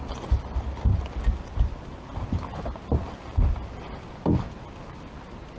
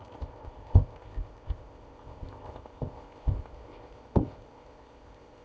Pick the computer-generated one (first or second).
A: second